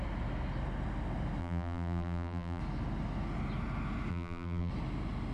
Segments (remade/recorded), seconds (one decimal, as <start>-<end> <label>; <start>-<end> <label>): 0.0-1.4 recorded; 1.4-2.6 remade; 2.6-4.1 recorded; 4.1-4.7 remade; 4.7-5.3 recorded